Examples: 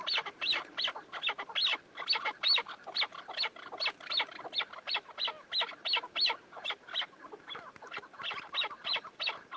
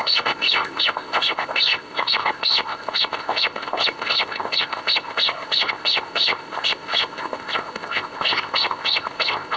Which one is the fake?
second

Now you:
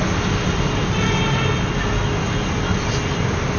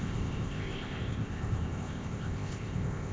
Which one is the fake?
second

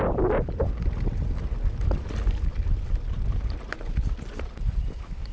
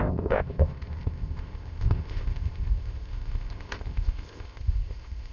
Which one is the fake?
second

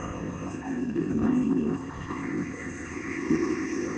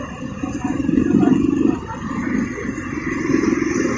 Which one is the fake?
first